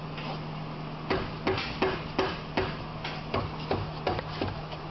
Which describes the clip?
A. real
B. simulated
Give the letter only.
A